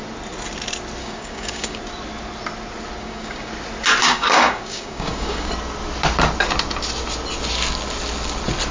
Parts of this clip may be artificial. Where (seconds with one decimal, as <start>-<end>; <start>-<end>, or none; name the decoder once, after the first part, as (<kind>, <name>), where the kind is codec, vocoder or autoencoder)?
1.0-1.8 (codec, DAC); 3.0-3.5; 4.0-5.5